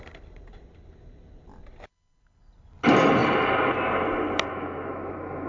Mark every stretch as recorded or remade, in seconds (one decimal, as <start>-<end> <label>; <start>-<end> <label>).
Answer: 0.0-4.5 recorded; 4.5-5.5 remade